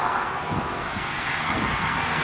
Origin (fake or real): fake